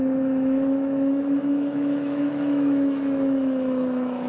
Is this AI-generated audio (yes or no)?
yes